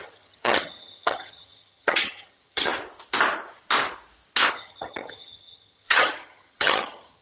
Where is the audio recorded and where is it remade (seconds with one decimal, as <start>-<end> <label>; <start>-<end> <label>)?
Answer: 0.0-2.7 remade; 2.7-4.5 recorded; 4.5-7.2 remade